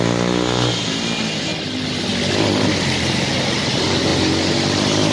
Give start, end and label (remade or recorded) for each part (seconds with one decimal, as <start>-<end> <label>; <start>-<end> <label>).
0.0-5.1 recorded